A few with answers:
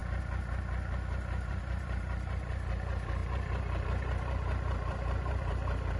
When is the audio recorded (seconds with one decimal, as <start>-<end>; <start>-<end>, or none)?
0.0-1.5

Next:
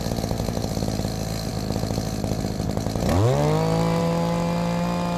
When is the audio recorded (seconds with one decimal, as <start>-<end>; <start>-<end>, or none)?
0.0-5.2

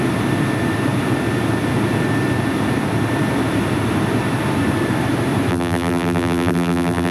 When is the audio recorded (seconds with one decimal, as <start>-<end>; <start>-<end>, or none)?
0.0-5.5

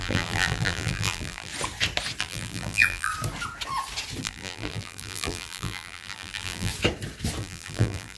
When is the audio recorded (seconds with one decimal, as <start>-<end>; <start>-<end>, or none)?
1.5-2.2; 3.1-4.2; 6.7-7.4

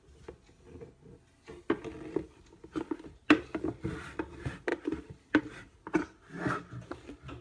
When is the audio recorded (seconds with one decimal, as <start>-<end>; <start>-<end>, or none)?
0.0-7.4